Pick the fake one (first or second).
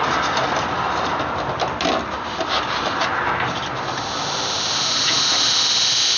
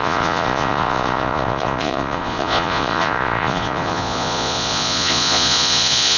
second